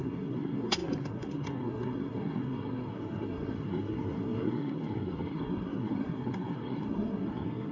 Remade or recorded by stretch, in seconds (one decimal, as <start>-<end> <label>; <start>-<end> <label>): 0.0-7.7 remade